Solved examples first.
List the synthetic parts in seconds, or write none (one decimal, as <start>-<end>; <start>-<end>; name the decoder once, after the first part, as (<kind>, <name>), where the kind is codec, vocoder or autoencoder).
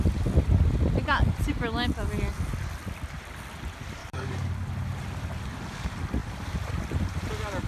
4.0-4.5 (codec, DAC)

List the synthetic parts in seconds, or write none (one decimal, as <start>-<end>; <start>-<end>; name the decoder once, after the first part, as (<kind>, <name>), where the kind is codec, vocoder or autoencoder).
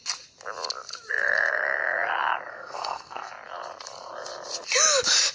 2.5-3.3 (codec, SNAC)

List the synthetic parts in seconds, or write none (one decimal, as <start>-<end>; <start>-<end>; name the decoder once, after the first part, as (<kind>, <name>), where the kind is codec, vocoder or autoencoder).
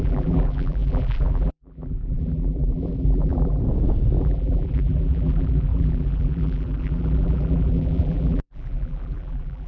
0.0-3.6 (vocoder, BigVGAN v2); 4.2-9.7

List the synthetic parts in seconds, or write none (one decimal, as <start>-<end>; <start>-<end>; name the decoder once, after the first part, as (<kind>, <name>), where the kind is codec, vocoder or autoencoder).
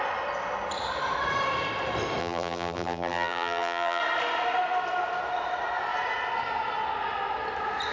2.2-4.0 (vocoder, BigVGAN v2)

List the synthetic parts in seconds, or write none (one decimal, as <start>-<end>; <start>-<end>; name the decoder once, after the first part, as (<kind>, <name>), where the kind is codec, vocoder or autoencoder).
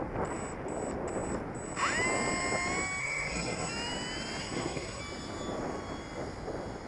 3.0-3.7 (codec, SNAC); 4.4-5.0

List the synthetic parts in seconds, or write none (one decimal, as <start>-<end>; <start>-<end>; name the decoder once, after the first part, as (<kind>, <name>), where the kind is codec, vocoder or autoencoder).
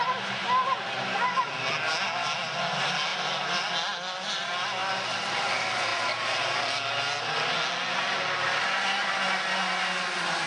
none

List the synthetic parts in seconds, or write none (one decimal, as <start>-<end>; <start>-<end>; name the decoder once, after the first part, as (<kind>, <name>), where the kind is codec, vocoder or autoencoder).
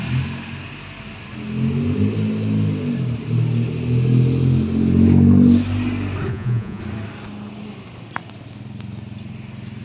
6.3-6.8 (vocoder, Vocos)